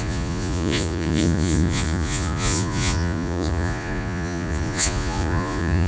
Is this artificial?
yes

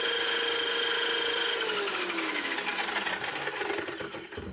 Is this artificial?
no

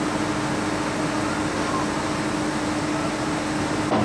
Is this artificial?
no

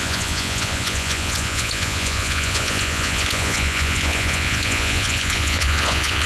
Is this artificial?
yes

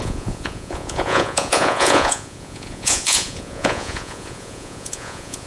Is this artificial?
yes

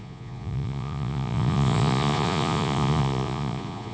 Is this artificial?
yes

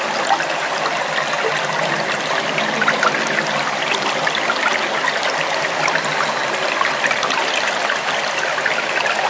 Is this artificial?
no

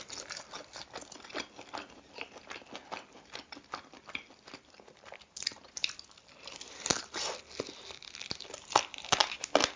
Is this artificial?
no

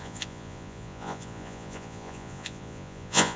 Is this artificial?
yes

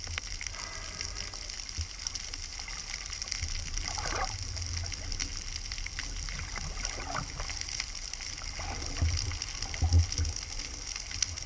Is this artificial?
no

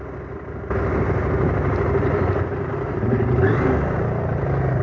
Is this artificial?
no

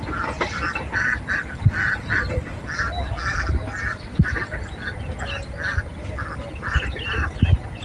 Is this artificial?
no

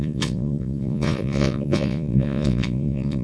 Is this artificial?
yes